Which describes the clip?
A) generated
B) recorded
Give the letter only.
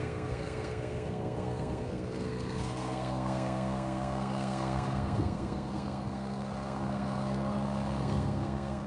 A